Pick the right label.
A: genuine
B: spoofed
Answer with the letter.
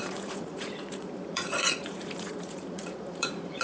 B